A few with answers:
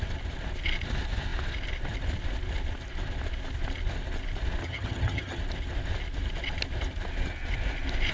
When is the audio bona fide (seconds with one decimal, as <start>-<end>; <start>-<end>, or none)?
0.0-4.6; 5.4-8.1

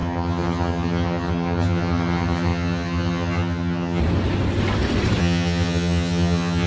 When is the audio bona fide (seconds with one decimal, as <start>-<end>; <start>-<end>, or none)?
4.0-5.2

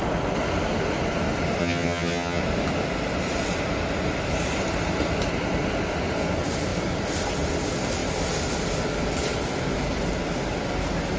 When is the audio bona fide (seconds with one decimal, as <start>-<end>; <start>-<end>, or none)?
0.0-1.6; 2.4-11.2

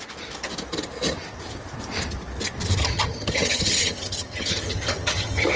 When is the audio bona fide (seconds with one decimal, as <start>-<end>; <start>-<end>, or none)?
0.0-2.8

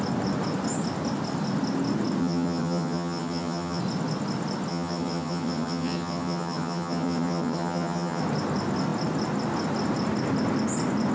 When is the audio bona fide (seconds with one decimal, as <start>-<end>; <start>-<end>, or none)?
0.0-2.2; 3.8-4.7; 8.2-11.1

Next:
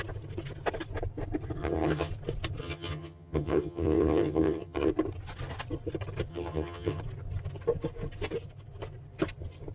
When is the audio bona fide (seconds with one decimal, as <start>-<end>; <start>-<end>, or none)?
0.0-1.6; 2.1-2.6; 4.9-6.3; 7.0-9.7

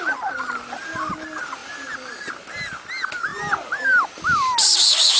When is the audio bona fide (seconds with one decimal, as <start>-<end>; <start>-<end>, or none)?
0.0-5.2